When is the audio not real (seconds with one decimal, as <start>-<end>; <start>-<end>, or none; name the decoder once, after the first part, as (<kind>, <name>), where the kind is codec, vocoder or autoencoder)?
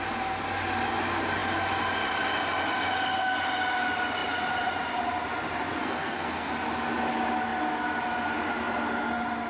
5.8-6.5 (codec, SNAC)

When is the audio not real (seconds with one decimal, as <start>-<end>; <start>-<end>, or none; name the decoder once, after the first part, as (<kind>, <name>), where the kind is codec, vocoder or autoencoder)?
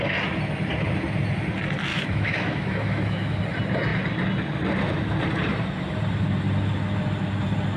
1.9-3.4 (autoencoder, DAC-VAE)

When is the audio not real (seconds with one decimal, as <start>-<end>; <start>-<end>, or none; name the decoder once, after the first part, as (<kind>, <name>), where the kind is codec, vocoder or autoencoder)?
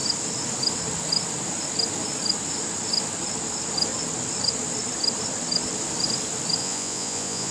6.6-7.5 (vocoder, Vocos)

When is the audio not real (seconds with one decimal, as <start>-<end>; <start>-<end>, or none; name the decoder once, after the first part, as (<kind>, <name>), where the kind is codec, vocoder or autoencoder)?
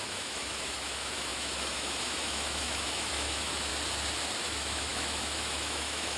0.0-3.7 (autoencoder, DAC-VAE); 4.4-6.2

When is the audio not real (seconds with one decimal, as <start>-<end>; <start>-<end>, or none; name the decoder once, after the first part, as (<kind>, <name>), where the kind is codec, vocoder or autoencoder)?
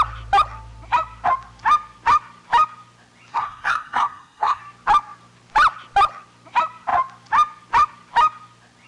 3.3-4.6 (codec, SNAC)